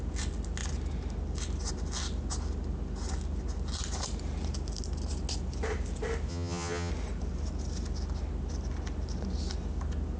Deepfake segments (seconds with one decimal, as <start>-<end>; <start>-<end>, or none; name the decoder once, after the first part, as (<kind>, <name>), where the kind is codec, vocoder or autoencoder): 6.3-6.9 (vocoder, HiFi-GAN)